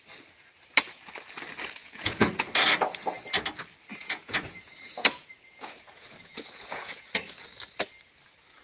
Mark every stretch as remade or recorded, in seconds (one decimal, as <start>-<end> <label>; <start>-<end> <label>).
0.0-1.8 recorded; 1.8-2.3 remade; 2.3-3.9 recorded; 3.9-7.1 remade; 7.1-8.6 recorded